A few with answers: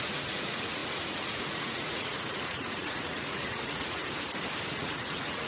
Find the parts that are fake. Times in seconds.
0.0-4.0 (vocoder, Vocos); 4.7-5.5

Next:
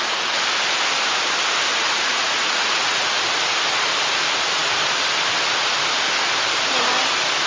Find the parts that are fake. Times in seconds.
1.7-3.2 (vocoder, Vocos)

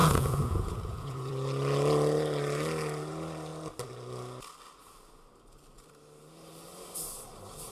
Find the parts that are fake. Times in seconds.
0.0-1.3 (vocoder, Vocos)